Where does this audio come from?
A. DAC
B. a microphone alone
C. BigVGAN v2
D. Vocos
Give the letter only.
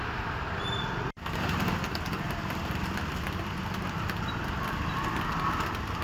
B